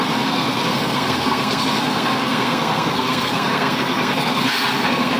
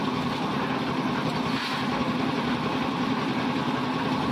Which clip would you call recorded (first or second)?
second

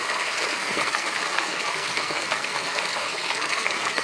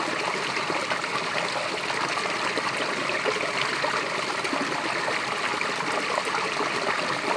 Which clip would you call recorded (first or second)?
second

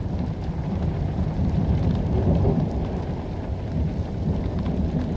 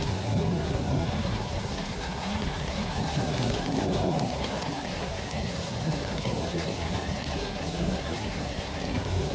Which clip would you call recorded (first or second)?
first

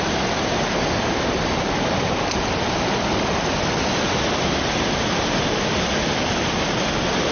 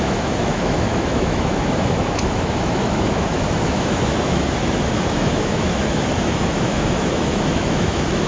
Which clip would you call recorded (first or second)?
first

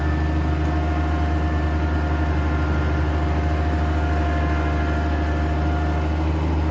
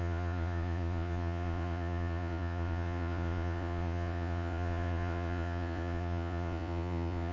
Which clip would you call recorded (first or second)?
first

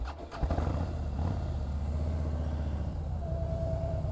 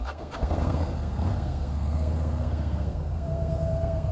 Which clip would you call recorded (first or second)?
first